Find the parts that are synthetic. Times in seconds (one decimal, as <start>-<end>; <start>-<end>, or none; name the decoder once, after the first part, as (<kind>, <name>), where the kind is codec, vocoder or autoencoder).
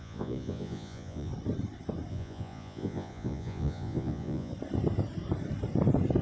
0.0-1.3 (vocoder, Vocos); 2.1-4.5